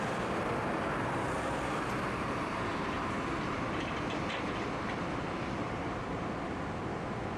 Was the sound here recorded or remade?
recorded